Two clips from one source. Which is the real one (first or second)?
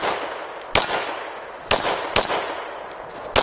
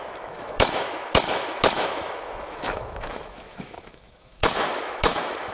first